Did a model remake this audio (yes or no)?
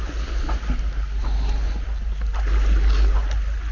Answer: no